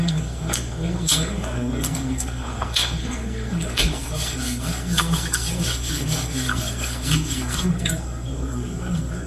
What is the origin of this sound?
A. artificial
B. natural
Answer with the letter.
A